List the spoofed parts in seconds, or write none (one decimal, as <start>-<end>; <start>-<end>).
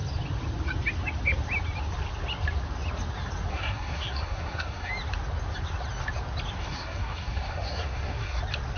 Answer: 3.5-4.9; 6.6-8.4